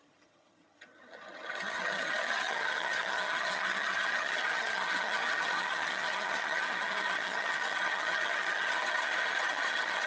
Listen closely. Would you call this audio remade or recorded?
remade